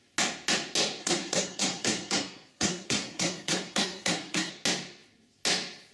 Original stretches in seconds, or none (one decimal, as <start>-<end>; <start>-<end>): 0.0-1.0; 4.5-5.9